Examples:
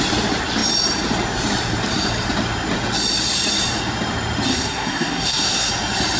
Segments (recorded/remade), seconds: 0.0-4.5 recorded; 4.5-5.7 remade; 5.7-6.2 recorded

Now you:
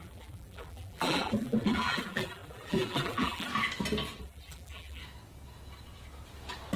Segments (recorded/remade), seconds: 0.0-3.5 remade; 3.5-4.2 recorded; 4.2-5.0 remade; 5.0-6.8 recorded

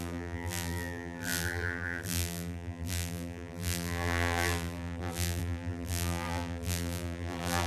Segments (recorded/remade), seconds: 0.0-7.7 remade